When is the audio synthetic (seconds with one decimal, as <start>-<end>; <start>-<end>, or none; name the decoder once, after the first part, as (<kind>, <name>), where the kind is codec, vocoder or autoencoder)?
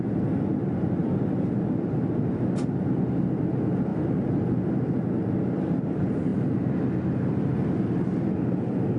none